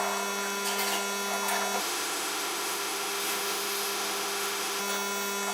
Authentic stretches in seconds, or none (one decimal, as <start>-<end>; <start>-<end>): 0.0-1.8; 4.8-5.5